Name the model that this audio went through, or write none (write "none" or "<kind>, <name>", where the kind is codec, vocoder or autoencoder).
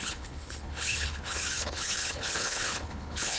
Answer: codec, HILCodec